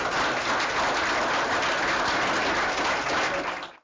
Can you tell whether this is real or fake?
real